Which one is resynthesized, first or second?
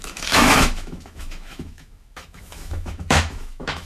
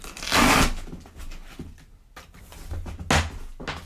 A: first